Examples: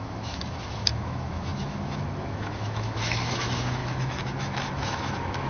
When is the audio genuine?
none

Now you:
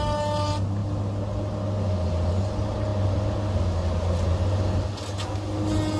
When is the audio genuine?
0.0-6.0

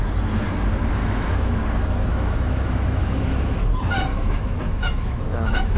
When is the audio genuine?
0.0-1.0; 1.6-2.1; 3.6-4.1

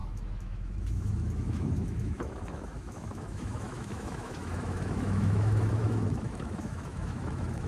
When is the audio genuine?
none

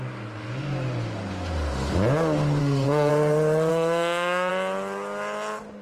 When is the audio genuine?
0.0-2.6; 3.1-3.7; 4.5-5.8

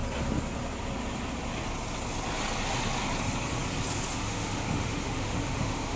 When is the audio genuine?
0.0-4.1

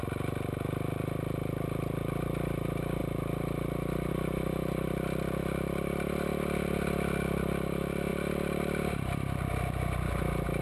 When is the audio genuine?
0.0-10.6